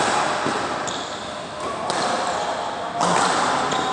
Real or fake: real